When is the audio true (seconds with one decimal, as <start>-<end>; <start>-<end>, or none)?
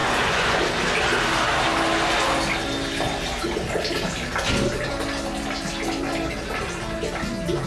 0.6-7.7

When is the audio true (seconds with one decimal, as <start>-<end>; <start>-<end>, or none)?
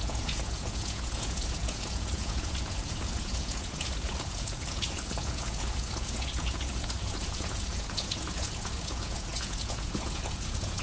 none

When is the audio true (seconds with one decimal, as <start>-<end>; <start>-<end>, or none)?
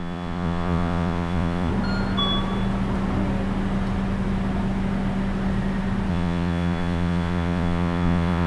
1.7-6.1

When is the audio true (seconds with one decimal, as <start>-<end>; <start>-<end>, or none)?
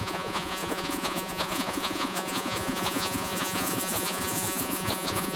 none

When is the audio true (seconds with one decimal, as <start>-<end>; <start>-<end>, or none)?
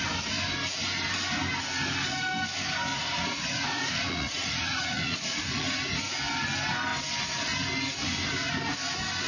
0.0-2.9; 5.8-9.3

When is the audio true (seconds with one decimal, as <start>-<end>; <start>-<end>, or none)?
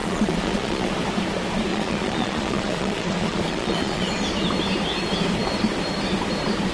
0.9-1.7; 4.1-6.7